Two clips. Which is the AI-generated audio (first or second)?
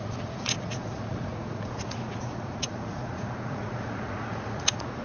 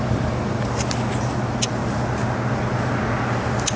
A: first